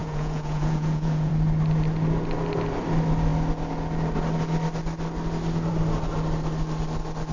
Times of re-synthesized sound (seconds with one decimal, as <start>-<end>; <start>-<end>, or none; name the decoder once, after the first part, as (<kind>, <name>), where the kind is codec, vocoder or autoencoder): 0.0-1.3 (vocoder, Vocos)